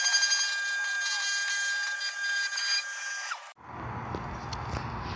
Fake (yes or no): no